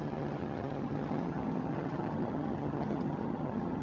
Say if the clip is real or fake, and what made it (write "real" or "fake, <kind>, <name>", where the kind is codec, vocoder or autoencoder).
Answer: fake, vocoder, HiFi-GAN